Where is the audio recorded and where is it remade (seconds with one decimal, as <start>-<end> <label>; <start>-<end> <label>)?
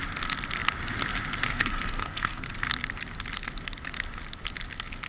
0.0-1.5 recorded; 1.5-2.5 remade; 2.5-5.1 recorded